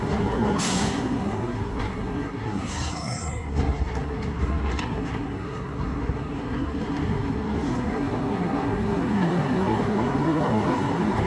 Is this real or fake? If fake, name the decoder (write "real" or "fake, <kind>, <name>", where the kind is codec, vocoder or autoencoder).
fake, codec, SNAC